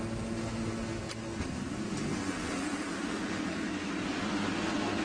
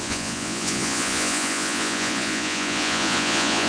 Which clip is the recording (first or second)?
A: first